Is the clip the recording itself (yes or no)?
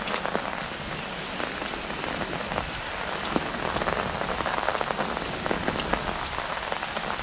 yes